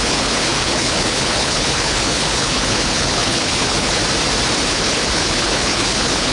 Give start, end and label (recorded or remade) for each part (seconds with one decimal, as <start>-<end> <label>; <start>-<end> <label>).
0.0-4.0 remade; 4.0-4.7 recorded; 4.7-6.3 remade